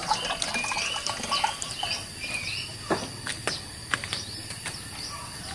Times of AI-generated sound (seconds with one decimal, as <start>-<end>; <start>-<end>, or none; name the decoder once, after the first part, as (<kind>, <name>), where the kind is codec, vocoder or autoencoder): 3.3-5.5 (vocoder, BigVGAN v2)

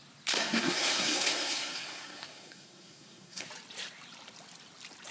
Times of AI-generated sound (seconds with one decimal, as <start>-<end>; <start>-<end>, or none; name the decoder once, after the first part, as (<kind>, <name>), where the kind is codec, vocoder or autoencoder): 0.4-3.5 (codec, SNAC)